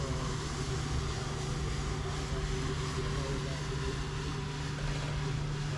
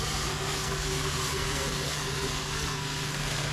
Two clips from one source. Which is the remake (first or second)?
second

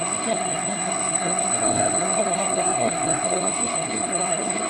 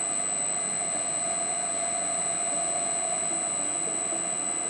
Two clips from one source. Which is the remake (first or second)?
first